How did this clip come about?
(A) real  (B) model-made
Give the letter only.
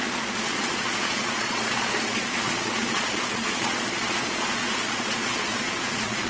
B